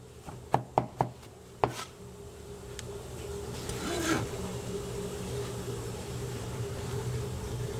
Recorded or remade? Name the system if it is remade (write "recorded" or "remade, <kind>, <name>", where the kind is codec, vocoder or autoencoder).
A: recorded